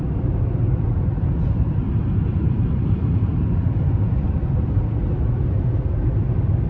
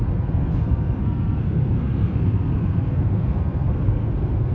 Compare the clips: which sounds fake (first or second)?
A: second